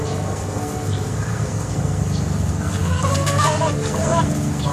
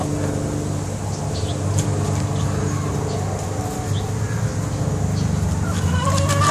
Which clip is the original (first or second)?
second